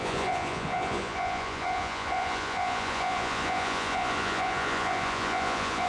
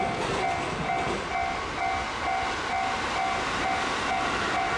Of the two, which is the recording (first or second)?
second